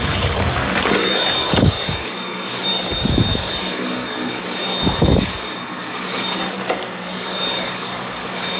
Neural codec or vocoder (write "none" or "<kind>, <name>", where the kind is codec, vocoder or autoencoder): codec, DAC